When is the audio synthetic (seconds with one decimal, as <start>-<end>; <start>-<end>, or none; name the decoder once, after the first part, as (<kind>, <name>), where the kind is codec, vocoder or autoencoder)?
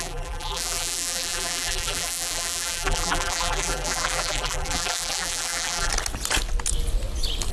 0.0-5.9 (vocoder, BigVGAN v2)